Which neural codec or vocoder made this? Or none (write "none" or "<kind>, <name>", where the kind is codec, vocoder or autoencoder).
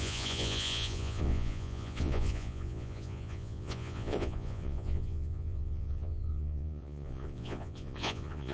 vocoder, Vocos